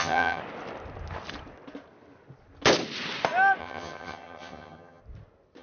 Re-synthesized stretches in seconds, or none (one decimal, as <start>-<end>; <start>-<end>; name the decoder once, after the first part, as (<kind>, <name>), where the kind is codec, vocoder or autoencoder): 0.0-0.4 (vocoder, HiFi-GAN); 3.6-5.0